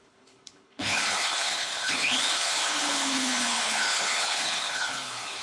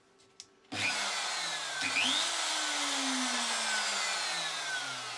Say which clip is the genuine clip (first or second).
second